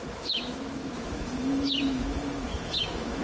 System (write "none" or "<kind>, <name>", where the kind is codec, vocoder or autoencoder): autoencoder, DAC-VAE